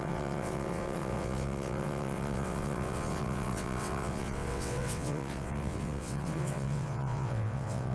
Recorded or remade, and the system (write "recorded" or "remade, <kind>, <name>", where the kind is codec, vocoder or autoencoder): remade, vocoder, WaveNeXt